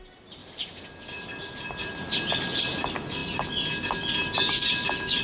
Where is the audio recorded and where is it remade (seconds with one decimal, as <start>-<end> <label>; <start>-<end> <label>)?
0.0-5.2 recorded